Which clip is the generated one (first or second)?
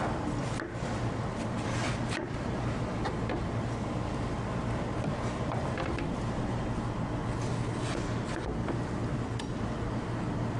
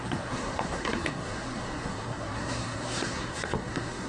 second